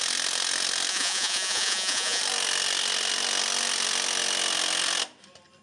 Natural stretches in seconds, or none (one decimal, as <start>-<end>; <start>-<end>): 0.0-0.9; 2.2-5.6